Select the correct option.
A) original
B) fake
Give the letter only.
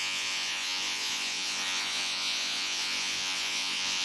B